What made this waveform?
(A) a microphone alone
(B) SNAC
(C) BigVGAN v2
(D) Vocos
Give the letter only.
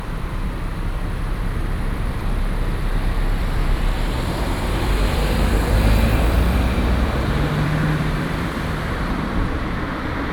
C